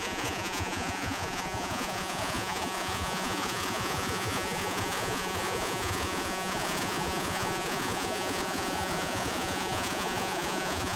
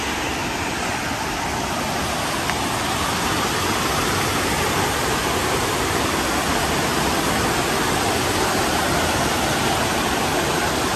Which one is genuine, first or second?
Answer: second